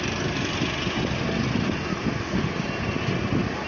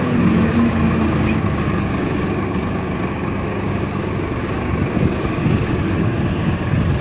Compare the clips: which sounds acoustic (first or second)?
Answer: first